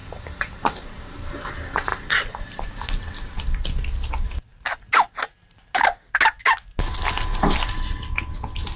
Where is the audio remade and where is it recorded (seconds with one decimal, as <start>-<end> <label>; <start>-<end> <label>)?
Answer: 0.0-1.5 remade; 1.5-1.9 recorded; 1.9-2.7 remade; 2.7-8.8 recorded